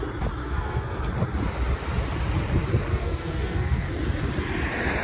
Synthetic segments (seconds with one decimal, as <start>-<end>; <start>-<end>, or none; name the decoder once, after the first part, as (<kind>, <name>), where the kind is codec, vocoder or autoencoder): 0.4-1.1 (codec, SNAC); 2.9-3.9